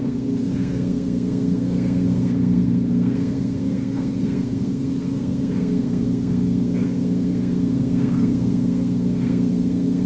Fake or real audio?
fake